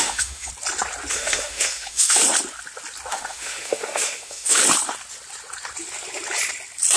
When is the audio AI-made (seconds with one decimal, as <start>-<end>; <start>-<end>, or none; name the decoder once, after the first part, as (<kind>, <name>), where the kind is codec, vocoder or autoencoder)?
0.0-0.5 (autoencoder, DAC-VAE); 1.1-2.2; 3.1-4.6